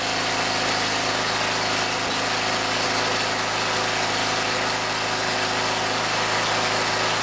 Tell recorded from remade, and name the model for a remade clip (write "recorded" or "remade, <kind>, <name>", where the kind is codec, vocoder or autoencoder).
recorded